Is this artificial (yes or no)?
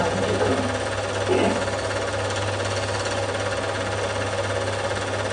no